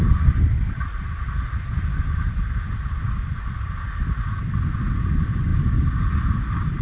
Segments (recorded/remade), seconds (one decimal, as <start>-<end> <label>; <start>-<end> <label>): 0.0-6.8 recorded